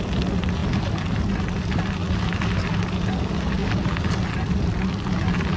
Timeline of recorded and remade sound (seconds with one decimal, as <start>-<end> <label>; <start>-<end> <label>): 0.0-5.6 recorded

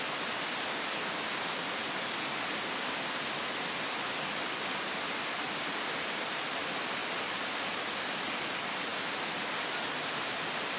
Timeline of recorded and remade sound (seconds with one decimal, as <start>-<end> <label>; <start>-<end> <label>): 0.0-10.8 recorded

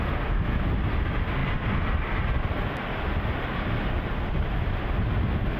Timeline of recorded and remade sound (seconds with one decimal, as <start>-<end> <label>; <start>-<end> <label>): 0.0-5.6 recorded